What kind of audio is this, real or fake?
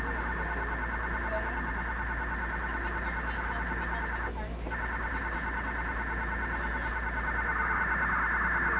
real